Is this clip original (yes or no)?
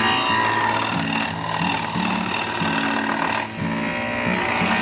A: yes